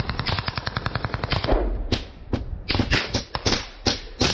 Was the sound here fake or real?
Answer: real